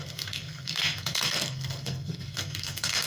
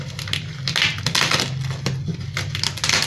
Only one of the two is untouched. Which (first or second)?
second